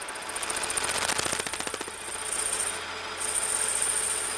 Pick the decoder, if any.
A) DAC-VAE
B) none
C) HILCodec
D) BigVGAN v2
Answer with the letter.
B